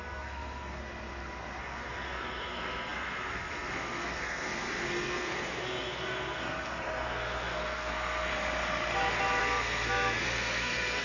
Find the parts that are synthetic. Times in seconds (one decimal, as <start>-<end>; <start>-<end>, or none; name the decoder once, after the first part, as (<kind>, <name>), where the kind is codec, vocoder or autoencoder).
0.0-0.8 (codec, SNAC); 1.6-8.3; 9.4-11.0